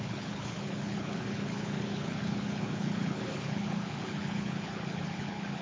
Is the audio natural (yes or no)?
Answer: no